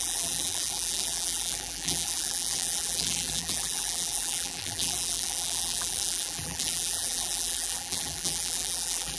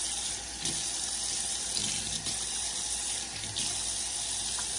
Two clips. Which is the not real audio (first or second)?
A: first